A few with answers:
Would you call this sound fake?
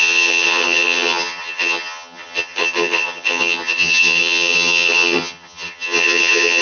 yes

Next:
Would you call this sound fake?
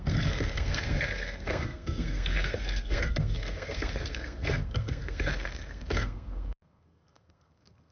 yes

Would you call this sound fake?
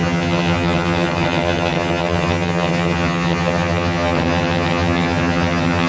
yes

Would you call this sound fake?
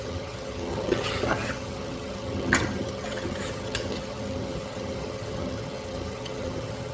yes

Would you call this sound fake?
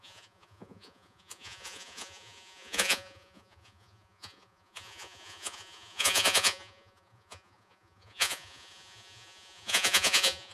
yes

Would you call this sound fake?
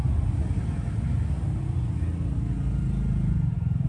no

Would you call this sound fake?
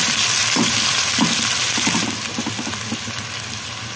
yes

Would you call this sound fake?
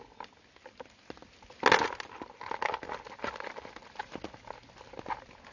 no